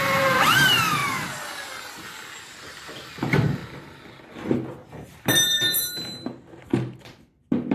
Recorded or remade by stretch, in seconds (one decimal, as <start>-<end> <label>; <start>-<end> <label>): 0.0-3.6 remade; 3.6-7.7 recorded